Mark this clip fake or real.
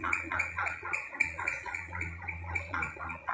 fake